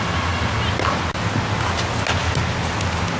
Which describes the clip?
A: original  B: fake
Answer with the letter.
A